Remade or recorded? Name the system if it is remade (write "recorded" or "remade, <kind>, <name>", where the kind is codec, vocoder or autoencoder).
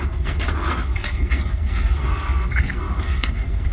remade, codec, SNAC